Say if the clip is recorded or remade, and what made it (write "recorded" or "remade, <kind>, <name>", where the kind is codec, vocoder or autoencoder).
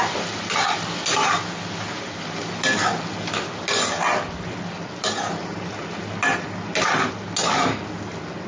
recorded